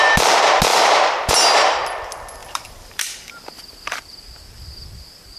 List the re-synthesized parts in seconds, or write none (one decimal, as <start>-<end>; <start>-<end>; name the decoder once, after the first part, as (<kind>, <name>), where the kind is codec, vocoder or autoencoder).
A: 0.7-1.3 (vocoder, BigVGAN v2); 2.4-4.0